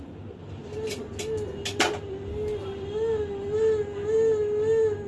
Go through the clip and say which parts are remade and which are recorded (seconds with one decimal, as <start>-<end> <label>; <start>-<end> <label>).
0.0-5.1 recorded